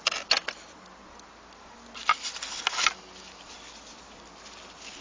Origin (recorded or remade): recorded